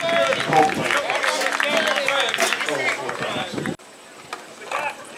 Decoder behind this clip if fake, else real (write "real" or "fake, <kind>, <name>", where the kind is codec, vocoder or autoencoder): real